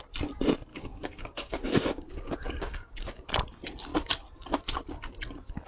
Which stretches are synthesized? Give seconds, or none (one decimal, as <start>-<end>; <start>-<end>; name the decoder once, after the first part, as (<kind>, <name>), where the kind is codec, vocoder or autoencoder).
0.7-3.3 (codec, DAC)